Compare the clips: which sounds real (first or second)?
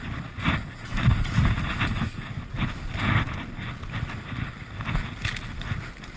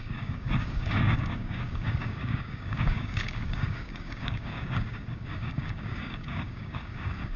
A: first